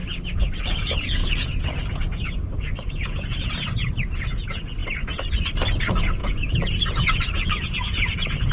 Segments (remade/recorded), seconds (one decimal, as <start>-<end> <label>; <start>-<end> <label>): 0.0-0.6 recorded; 0.6-4.8 remade; 4.8-5.8 recorded; 5.8-8.5 remade